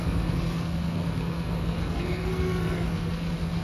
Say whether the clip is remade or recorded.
remade